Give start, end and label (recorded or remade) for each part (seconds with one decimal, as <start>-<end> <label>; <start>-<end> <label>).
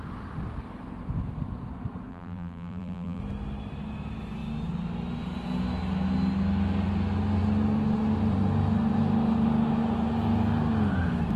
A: 0.0-2.1 recorded; 2.1-3.2 remade; 3.2-11.4 recorded